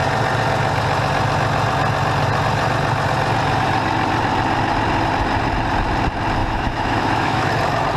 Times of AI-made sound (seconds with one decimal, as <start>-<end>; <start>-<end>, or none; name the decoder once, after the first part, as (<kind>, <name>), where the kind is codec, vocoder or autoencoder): 6.4-7.5 (autoencoder, DAC-VAE)